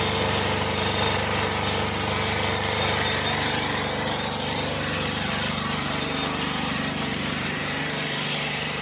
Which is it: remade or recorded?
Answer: remade